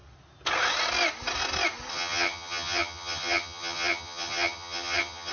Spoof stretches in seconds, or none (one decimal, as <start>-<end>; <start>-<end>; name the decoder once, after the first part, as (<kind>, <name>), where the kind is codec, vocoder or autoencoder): 1.9-5.3 (vocoder, HiFi-GAN)